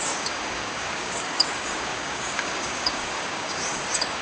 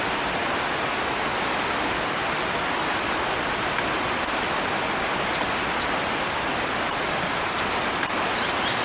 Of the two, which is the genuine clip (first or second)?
second